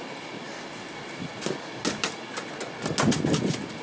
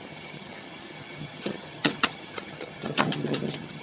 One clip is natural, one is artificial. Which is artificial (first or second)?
second